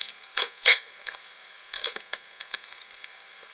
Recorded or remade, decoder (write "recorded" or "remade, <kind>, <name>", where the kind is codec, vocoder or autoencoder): remade, codec, SNAC